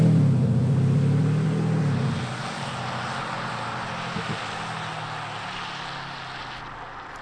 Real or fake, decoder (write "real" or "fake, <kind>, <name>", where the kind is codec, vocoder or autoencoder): real